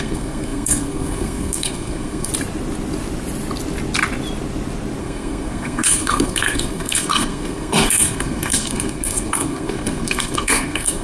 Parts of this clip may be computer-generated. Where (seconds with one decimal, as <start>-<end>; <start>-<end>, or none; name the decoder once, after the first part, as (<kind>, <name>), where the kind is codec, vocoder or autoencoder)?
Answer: 0.0-2.3 (codec, SNAC); 5.0-11.0